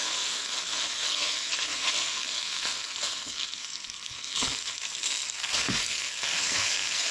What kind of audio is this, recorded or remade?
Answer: remade